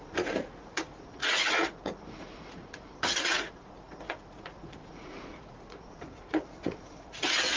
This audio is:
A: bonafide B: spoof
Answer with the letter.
B